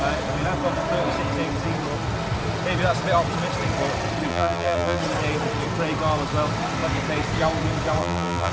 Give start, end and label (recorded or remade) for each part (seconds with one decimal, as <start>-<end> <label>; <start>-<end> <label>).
0.0-4.3 recorded; 4.3-5.0 remade; 5.0-8.0 recorded; 8.0-8.5 remade